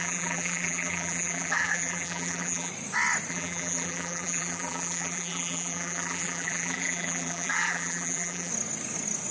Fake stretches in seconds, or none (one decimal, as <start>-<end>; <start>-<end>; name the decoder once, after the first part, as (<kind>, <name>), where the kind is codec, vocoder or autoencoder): 0.0-2.7 (vocoder, BigVGAN v2); 3.3-8.5